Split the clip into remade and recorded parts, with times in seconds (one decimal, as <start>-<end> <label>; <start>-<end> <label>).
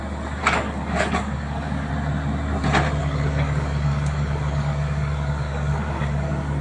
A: 0.0-0.4 recorded; 0.4-1.9 remade; 1.9-3.0 recorded; 3.0-6.6 remade